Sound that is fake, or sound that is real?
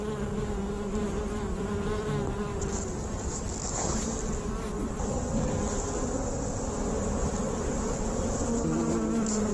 real